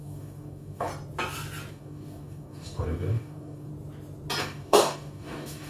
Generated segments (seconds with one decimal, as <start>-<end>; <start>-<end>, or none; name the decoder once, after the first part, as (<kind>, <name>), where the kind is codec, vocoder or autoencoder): 0.0-0.9 (codec, DAC); 1.7-3.7; 4.4-5.7